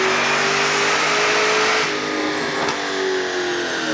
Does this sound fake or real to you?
real